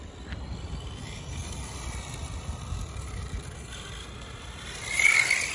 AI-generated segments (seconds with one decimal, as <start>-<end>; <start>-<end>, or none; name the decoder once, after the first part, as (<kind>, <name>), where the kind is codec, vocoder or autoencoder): none